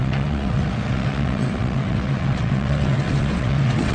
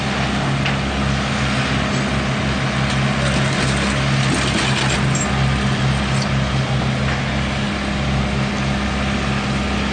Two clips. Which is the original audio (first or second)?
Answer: second